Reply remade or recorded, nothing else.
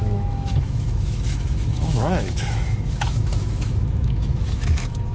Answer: remade